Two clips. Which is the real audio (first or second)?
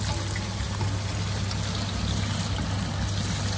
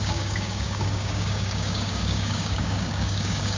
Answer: first